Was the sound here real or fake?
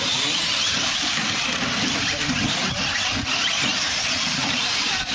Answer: real